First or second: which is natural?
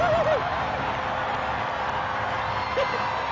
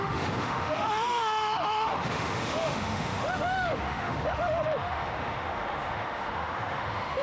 first